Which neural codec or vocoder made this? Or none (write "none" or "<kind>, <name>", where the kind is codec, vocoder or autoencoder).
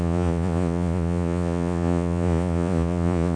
vocoder, Vocos